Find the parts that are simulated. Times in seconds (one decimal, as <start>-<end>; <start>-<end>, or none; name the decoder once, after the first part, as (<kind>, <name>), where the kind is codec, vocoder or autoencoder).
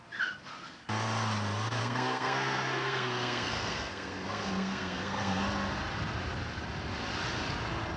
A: 1.8-5.4 (codec, SNAC)